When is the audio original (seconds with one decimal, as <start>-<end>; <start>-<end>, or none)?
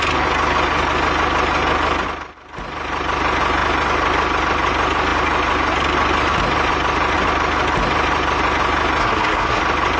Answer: 0.0-9.0; 9.6-10.0